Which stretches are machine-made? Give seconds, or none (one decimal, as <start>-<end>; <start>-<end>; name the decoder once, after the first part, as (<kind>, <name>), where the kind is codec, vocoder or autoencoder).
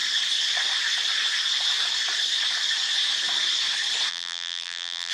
4.1-5.1 (vocoder, BigVGAN v2)